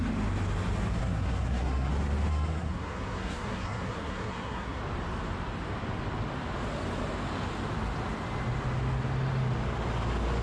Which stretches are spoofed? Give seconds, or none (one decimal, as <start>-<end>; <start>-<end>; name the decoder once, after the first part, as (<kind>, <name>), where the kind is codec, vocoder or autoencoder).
1.0-1.9 (codec, SNAC); 2.3-4.8